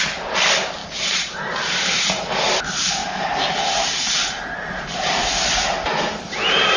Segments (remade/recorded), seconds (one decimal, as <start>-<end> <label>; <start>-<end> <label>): 0.0-0.8 recorded; 0.8-2.3 remade; 2.3-3.0 recorded; 3.0-5.3 remade; 5.3-6.8 recorded